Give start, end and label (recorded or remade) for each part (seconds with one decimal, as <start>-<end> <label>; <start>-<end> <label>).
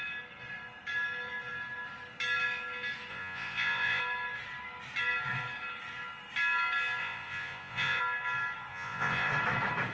0.0-3.1 recorded; 3.1-4.0 remade; 4.0-7.0 recorded; 7.0-8.0 remade; 8.0-8.7 recorded; 8.7-9.3 remade; 9.3-9.9 recorded